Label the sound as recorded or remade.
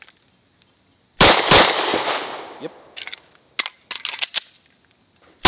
recorded